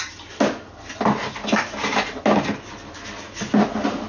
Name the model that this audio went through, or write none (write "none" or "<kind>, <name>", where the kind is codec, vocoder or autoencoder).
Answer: none